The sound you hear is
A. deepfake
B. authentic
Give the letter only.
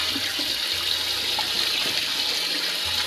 B